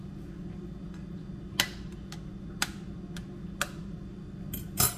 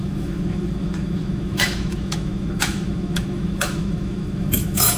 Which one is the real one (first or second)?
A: first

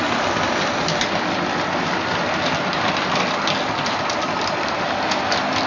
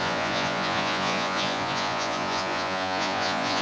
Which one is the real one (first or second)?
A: first